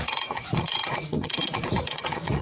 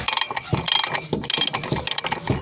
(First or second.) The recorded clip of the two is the second